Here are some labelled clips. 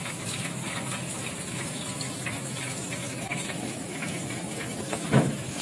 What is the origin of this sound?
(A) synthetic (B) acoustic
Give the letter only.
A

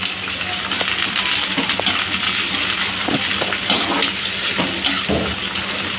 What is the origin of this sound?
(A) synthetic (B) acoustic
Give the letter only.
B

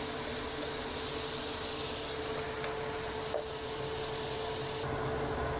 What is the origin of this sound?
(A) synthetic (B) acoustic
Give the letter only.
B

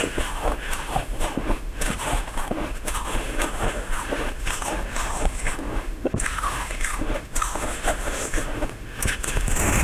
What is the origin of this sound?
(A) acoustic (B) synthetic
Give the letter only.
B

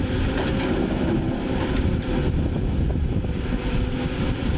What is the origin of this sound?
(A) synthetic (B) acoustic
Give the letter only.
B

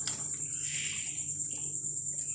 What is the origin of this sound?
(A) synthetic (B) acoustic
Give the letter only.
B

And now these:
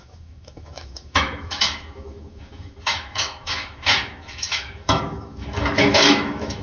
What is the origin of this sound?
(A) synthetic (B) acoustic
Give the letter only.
A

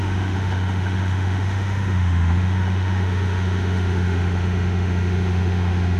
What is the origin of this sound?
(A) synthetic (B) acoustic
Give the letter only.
A